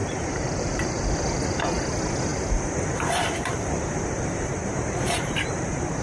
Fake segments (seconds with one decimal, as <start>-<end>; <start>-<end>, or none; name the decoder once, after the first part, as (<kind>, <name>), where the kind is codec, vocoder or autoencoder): 0.0-1.0 (vocoder, BigVGAN v2); 2.3-6.0